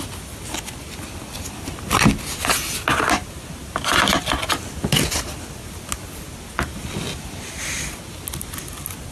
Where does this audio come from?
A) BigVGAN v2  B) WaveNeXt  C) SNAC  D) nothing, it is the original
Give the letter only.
D